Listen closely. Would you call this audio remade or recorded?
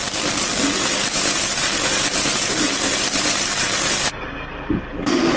recorded